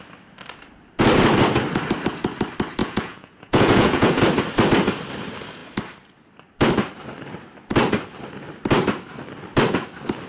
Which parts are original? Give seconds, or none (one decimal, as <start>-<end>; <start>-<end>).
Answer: 0.0-2.8; 4.2-10.3